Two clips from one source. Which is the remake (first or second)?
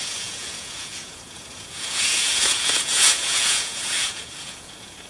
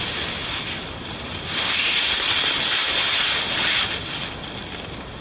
first